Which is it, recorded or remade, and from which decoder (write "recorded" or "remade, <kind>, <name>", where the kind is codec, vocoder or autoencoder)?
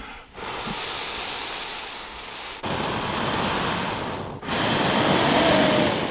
recorded